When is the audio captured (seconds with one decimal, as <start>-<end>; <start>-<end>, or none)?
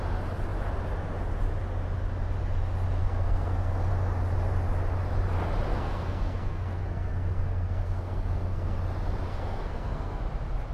0.0-3.0; 3.9-5.7; 8.8-9.3; 10.2-10.7